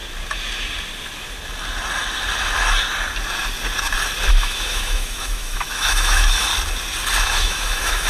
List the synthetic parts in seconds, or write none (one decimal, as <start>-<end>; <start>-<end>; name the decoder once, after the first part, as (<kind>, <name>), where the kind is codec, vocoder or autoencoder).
4.3-6.5 (autoencoder, DAC-VAE); 7.2-8.1